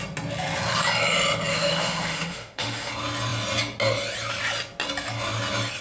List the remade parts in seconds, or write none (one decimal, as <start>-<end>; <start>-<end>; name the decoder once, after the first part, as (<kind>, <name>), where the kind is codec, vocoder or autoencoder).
1.5-2.9 (autoencoder, DAC-VAE)